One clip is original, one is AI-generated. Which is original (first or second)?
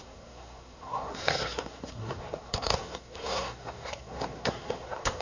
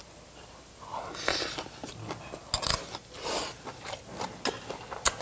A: second